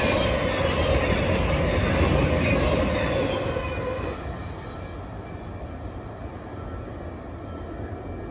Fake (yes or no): no